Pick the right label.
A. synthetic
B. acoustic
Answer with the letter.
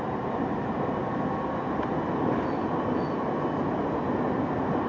B